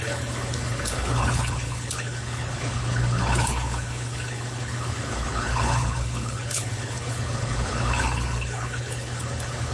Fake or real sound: fake